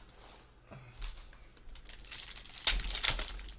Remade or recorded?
recorded